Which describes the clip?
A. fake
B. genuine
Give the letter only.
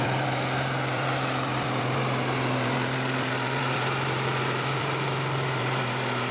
A